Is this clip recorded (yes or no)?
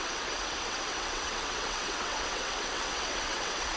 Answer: no